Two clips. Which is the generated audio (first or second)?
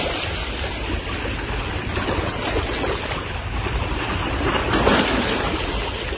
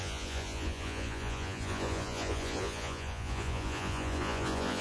second